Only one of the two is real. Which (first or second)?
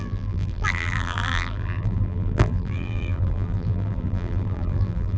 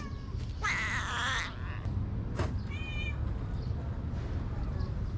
second